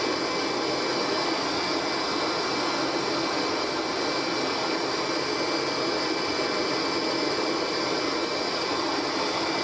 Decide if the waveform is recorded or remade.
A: recorded